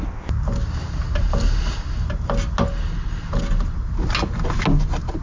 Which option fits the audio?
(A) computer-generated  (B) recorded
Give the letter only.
B